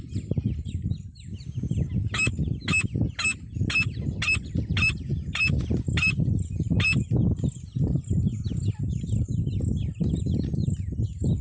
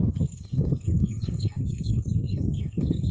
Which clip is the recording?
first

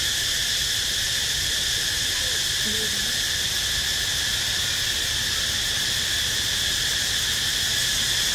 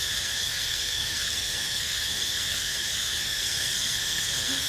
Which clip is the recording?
first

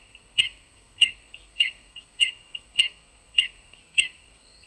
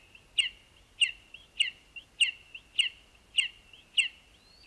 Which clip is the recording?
second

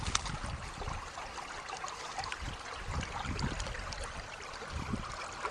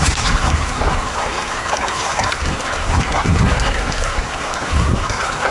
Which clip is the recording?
first